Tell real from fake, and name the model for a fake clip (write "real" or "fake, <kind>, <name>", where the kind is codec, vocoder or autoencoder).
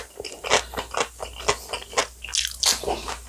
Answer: real